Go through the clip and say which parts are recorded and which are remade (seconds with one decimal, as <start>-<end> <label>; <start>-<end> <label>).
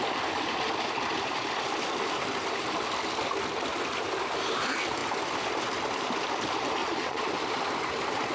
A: 0.0-6.8 recorded; 6.8-7.3 remade; 7.3-8.3 recorded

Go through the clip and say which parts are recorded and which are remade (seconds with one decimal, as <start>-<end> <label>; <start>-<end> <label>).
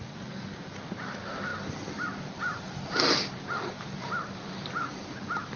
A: 0.0-5.6 recorded